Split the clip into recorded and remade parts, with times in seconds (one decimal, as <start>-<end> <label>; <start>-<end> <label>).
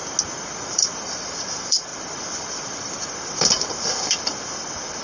0.0-0.6 recorded; 0.6-5.0 remade